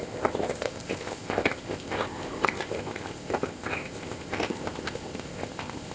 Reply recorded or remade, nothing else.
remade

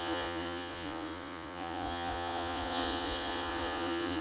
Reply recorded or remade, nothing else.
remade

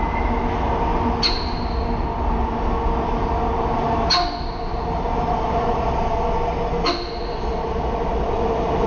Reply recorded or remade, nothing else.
recorded